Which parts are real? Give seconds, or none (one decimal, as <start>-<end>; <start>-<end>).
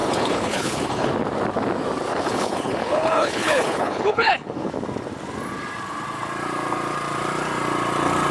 1.1-2.1; 4.7-8.3